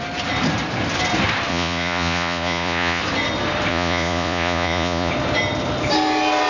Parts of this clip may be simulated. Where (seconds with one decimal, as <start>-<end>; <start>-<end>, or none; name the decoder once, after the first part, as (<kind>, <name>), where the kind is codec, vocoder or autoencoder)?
1.5-3.0 (vocoder, Vocos); 3.7-5.1